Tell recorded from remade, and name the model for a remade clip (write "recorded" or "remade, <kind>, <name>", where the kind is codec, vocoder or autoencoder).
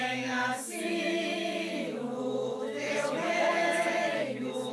remade, autoencoder, DAC-VAE